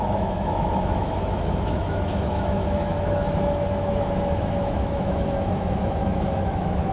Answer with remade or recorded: remade